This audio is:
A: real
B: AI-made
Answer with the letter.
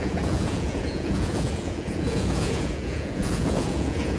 B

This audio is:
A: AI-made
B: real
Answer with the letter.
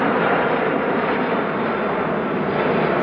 B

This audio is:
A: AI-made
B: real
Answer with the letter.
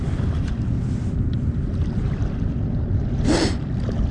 B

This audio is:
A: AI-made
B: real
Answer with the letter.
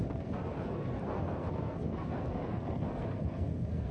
A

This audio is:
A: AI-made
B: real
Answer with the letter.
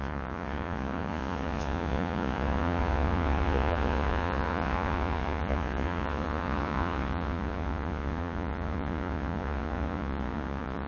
A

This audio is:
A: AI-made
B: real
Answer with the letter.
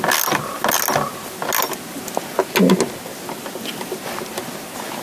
B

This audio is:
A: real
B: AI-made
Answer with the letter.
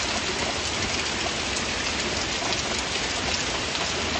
A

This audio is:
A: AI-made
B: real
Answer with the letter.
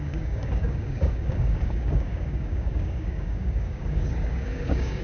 A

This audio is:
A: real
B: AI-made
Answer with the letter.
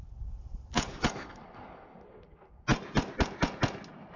A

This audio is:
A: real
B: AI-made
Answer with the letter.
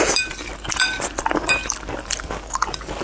A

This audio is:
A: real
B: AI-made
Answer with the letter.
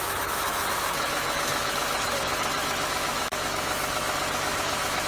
B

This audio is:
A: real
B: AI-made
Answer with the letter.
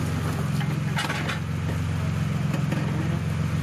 A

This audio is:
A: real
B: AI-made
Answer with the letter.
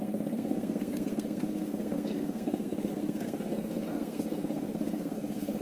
B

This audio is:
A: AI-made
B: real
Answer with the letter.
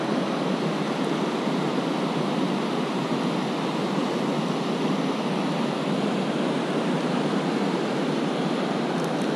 B